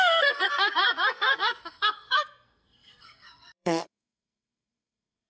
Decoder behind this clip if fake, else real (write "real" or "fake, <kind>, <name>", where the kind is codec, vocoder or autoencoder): fake, codec, SNAC